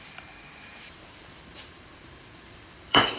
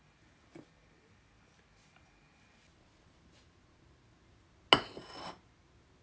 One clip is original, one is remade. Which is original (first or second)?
second